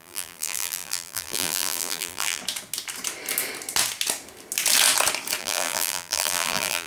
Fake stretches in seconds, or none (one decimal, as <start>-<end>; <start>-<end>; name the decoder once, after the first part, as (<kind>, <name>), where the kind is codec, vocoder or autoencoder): 0.0-2.4 (vocoder, BigVGAN v2); 5.4-6.9